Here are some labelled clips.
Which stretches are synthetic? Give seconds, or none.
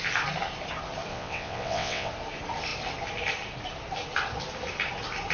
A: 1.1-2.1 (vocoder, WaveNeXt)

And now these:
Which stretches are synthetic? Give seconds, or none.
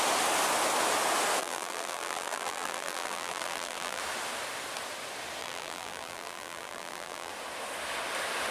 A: 1.4-4.0 (vocoder, BigVGAN v2); 5.4-7.3